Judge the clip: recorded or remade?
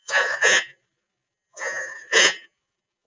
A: remade